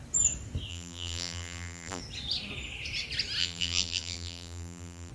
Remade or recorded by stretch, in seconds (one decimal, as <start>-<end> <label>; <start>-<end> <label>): 0.0-0.7 recorded; 0.7-2.0 remade; 2.0-3.4 recorded; 3.4-5.1 remade